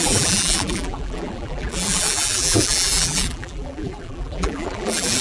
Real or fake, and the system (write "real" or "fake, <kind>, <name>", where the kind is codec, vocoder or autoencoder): fake, vocoder, BigVGAN v2